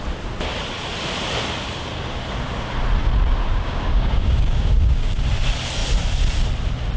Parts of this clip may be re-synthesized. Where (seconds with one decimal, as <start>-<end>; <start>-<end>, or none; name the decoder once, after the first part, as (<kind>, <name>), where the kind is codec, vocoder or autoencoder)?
3.5-5.2 (codec, DAC)